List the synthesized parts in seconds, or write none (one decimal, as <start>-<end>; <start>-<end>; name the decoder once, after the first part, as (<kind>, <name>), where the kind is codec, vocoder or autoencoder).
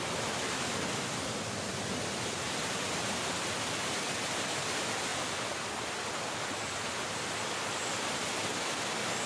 none